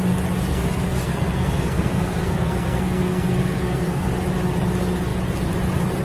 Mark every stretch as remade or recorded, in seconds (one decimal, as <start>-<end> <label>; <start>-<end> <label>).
0.0-0.5 recorded; 0.5-4.1 remade; 4.1-6.0 recorded